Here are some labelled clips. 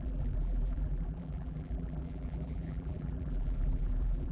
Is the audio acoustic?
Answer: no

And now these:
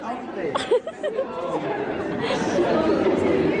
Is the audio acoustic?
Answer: no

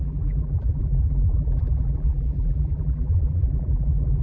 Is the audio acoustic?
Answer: no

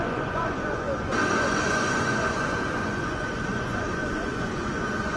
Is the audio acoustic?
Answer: no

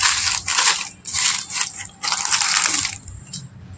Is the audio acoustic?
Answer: yes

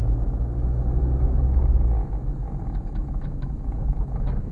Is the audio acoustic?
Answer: no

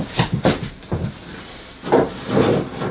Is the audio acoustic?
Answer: yes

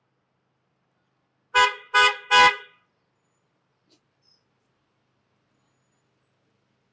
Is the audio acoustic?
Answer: yes